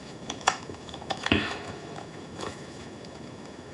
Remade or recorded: remade